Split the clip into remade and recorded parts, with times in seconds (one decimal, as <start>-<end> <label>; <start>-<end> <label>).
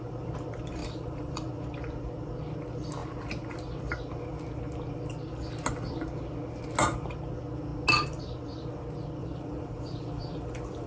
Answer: 0.0-0.8 recorded; 0.8-1.5 remade; 1.5-9.2 recorded; 9.2-10.9 remade